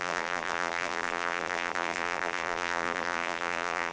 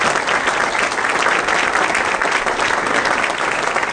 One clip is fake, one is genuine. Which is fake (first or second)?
first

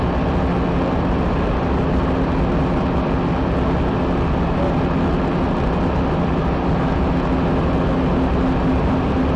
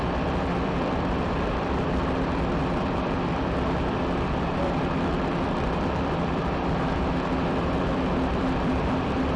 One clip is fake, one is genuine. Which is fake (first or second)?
second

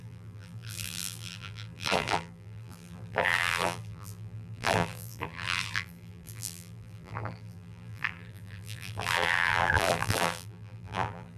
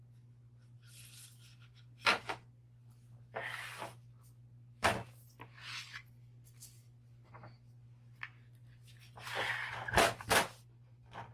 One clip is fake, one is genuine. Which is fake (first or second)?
first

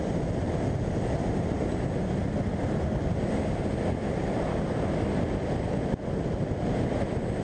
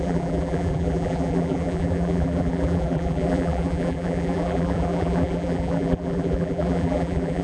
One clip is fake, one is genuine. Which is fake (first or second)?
second